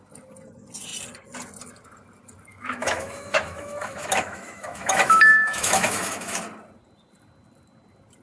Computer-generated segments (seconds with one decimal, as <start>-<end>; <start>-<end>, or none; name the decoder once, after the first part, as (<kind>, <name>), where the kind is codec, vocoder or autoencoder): 2.5-6.4 (autoencoder, DAC-VAE)